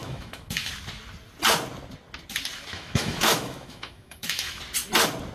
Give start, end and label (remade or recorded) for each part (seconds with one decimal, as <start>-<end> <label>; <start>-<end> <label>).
0.0-0.7 remade; 0.7-2.7 recorded; 2.7-4.6 remade; 4.6-5.3 recorded